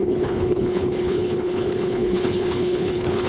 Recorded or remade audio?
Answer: remade